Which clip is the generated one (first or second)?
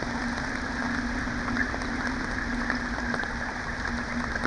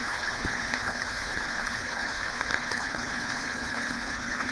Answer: second